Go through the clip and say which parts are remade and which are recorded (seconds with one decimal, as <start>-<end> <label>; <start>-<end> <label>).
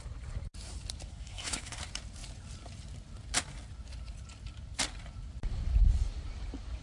0.0-1.1 recorded; 1.1-1.8 remade; 1.8-6.8 recorded